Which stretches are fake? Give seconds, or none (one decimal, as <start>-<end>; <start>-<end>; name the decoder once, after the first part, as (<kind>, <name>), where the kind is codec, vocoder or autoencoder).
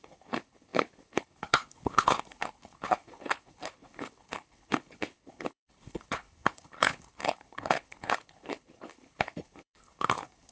0.0-10.5 (codec, HILCodec)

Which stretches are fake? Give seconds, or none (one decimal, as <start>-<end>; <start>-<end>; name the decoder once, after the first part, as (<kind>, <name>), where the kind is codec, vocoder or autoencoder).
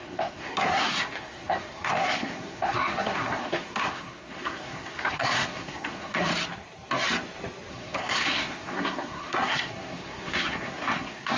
0.0-6.3 (codec, SNAC); 7.7-11.4